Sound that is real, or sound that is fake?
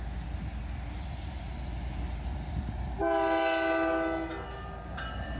real